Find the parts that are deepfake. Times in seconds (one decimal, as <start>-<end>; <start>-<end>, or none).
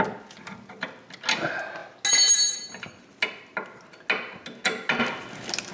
none